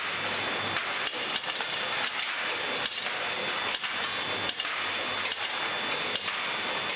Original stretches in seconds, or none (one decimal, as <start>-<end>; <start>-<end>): 0.0-7.0